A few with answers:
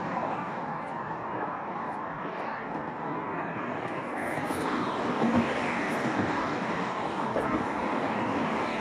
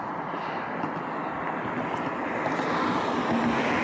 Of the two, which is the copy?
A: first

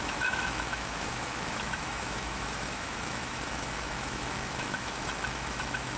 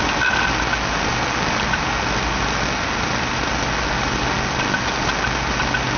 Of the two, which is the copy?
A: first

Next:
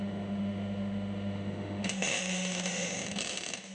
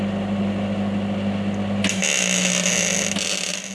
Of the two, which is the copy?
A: first